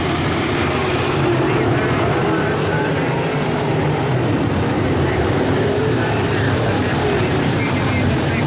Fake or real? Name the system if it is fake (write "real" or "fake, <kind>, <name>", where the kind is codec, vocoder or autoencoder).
fake, vocoder, BigVGAN v2